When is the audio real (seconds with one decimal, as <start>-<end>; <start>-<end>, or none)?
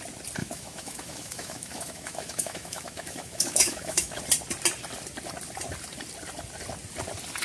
0.0-0.4; 4.2-7.4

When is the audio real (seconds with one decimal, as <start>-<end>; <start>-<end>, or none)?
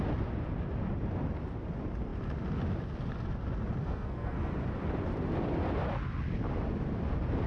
0.0-3.8; 4.5-7.5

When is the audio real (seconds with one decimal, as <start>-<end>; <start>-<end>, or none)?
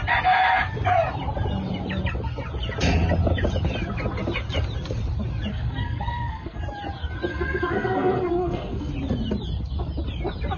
0.0-5.5; 6.6-7.3; 8.9-10.6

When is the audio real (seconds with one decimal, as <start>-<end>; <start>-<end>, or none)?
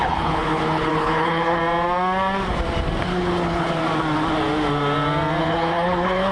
1.6-3.1; 3.8-5.4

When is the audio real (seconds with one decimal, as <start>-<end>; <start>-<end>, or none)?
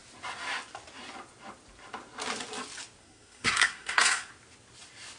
0.0-3.0; 4.3-5.2